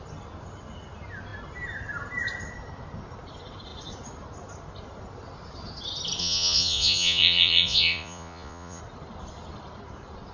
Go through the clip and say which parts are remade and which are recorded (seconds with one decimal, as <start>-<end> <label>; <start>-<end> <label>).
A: 0.0-6.2 recorded; 6.2-8.8 remade; 8.8-10.3 recorded

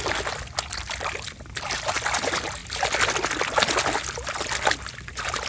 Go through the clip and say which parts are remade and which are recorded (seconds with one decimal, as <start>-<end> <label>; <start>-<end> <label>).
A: 0.0-5.5 recorded